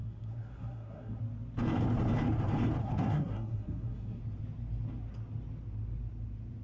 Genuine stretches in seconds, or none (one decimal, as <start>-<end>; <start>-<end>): 1.2-2.8; 4.2-6.6